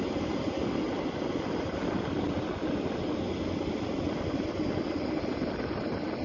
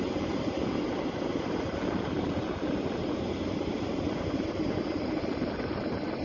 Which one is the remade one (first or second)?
second